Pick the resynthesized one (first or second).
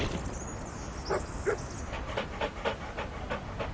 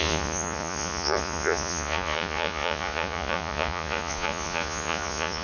second